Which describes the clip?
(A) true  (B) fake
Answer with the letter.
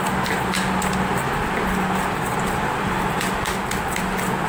A